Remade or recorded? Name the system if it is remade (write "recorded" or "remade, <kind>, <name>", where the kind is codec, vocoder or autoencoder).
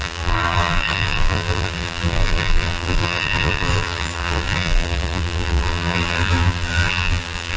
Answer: remade, vocoder, BigVGAN v2